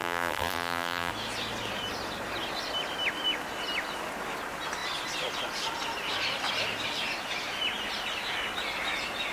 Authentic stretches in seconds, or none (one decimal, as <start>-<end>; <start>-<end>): 1.1-9.3